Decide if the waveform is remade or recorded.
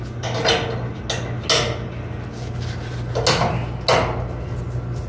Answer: recorded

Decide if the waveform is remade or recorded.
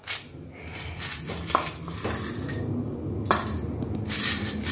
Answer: recorded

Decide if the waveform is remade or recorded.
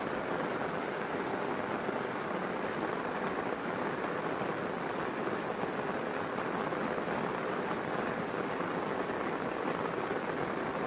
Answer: recorded